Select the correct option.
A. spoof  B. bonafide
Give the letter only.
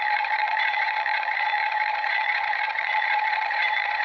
A